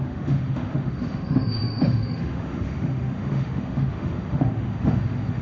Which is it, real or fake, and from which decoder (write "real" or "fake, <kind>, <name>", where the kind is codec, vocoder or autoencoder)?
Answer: fake, autoencoder, DAC-VAE